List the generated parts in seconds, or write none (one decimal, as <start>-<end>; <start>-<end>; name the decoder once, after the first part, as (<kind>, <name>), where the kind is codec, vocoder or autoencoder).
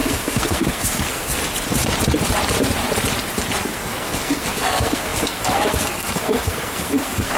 0.0-1.4 (codec, SNAC); 3.6-7.4